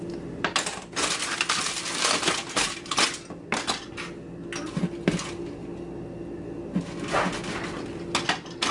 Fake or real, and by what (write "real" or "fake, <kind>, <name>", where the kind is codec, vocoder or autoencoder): real